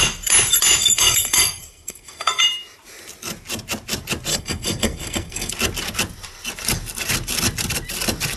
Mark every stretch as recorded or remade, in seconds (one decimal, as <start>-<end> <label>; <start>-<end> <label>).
0.0-0.8 recorded; 0.8-2.4 remade; 2.4-4.3 recorded; 4.3-5.5 remade; 5.5-8.4 recorded